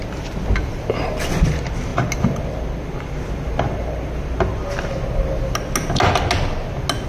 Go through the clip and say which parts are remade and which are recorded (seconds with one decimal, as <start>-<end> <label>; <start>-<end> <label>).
0.0-7.1 recorded